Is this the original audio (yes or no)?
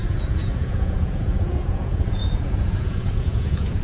no